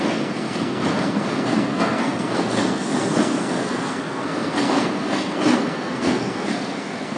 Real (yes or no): no